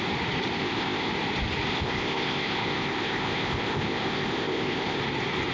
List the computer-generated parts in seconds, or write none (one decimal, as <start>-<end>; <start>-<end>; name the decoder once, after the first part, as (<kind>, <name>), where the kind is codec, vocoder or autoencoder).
0.6-1.1 (codec, ZipCodec); 1.7-5.0